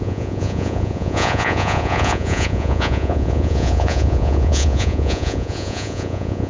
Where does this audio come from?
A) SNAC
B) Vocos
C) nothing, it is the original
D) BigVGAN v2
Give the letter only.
B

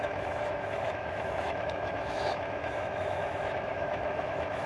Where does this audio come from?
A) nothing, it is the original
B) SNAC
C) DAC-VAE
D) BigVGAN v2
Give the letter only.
C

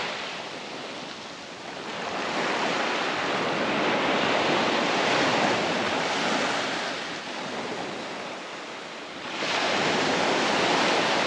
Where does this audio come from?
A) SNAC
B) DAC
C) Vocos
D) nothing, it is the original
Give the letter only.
D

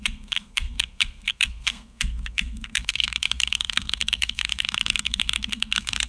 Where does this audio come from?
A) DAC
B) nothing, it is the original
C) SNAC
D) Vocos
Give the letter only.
C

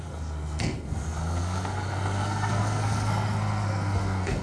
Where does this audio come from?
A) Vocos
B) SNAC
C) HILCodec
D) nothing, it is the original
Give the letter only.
B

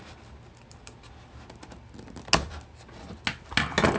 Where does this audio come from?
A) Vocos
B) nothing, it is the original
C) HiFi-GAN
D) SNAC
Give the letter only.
B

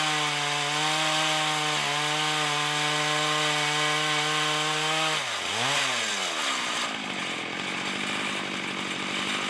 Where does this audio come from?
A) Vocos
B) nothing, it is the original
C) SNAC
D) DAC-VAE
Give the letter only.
B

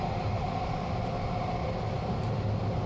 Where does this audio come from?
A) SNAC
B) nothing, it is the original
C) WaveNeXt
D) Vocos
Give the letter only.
B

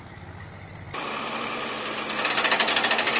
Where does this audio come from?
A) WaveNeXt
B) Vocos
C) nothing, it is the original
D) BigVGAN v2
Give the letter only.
C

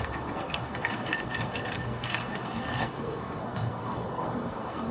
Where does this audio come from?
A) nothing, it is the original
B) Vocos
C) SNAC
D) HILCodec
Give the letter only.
C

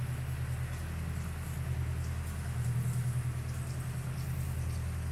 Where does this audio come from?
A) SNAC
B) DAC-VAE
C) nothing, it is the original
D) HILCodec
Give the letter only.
C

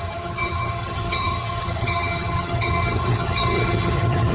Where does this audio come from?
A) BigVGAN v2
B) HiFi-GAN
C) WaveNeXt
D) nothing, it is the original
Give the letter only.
B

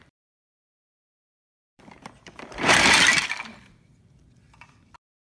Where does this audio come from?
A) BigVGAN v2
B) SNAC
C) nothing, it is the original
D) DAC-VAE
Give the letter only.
A